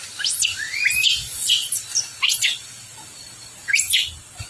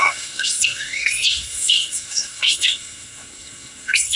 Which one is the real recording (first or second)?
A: first